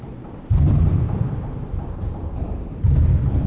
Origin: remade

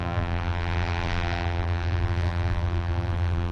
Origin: remade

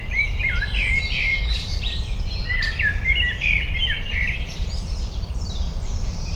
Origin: remade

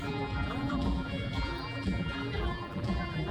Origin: remade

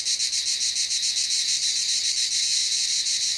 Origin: recorded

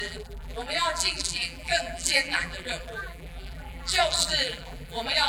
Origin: remade